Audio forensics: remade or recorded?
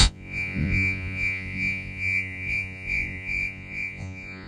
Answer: remade